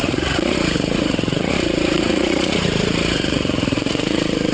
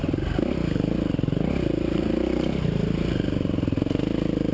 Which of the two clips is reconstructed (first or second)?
first